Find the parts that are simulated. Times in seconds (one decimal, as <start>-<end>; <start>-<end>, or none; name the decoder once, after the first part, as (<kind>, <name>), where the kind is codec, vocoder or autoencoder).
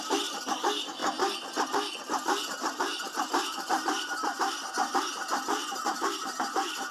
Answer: 0.0-1.0 (vocoder, BigVGAN v2); 2.4-6.9